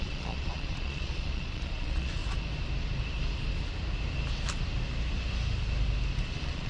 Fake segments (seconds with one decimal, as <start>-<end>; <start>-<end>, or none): 0.0-2.2; 6.2-6.7